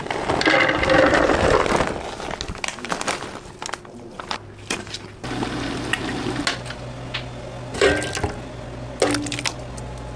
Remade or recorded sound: recorded